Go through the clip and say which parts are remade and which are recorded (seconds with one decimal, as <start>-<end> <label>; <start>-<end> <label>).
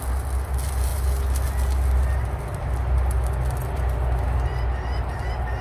0.0-5.6 recorded